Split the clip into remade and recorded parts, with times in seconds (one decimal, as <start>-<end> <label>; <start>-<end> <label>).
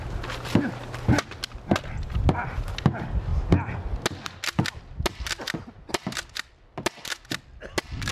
0.0-8.1 recorded